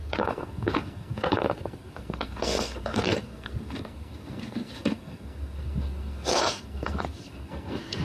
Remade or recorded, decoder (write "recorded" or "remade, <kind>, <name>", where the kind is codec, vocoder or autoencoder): remade, codec, SNAC